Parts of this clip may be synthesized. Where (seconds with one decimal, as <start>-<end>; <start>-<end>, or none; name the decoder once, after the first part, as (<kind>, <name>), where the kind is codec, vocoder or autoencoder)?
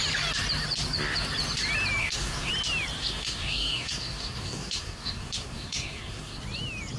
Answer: 2.0-2.5 (codec, SNAC); 3.0-6.4